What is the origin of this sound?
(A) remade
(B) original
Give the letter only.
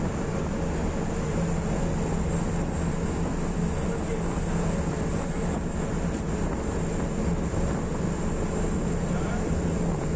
B